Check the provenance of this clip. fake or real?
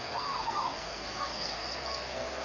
fake